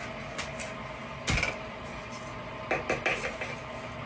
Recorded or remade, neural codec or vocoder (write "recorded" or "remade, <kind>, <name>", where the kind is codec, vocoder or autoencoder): recorded